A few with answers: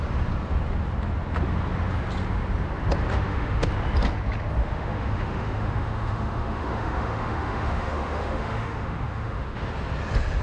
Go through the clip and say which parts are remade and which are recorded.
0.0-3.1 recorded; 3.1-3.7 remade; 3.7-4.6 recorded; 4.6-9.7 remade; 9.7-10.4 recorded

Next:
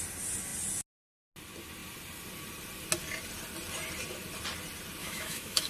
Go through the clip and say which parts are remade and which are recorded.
0.0-5.0 recorded; 5.0-5.7 remade

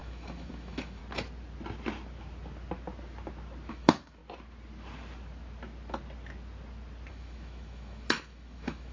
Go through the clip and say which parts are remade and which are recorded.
0.0-1.0 remade; 1.0-3.7 recorded; 3.7-4.2 remade; 4.2-7.1 recorded; 7.1-8.9 remade

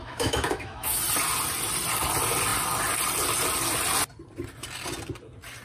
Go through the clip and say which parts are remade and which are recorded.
0.0-1.0 remade; 1.0-5.6 recorded

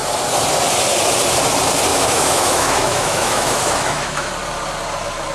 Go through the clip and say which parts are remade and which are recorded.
0.0-1.9 recorded; 1.9-4.3 remade; 4.3-5.3 recorded

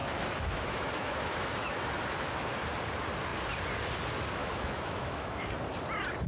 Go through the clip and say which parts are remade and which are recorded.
0.0-2.0 remade; 2.0-4.4 recorded; 4.4-5.5 remade; 5.5-6.3 recorded